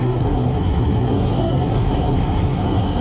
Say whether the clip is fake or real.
fake